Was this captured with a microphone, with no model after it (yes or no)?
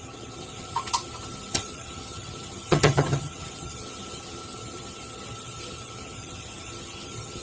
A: no